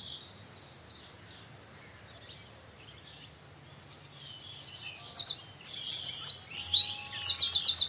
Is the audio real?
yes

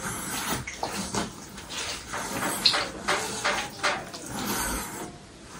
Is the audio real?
yes